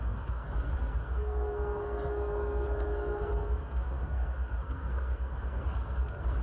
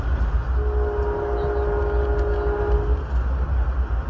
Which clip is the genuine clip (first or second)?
second